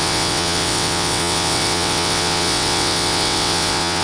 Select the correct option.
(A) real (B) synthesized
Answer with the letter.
B